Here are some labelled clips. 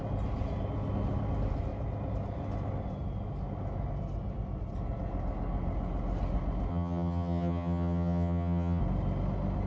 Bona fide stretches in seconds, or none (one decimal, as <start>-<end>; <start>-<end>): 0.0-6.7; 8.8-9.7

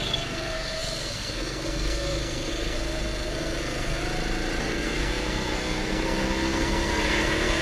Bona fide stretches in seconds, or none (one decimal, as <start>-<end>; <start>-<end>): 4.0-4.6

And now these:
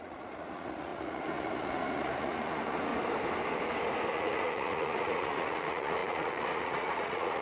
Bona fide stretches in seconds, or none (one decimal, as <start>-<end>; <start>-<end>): 2.9-4.1

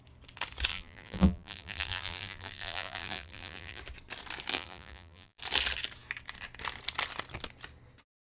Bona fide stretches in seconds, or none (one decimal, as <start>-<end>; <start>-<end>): 0.0-0.7; 3.8-4.5; 5.4-8.4

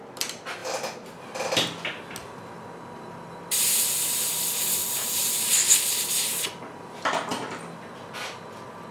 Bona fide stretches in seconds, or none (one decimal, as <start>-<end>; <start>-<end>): 0.0-4.8; 5.5-8.9

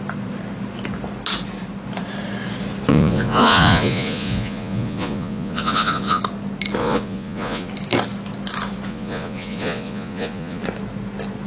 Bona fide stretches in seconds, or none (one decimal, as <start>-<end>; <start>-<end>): 0.0-2.9; 6.2-6.8; 7.7-8.9; 10.6-11.5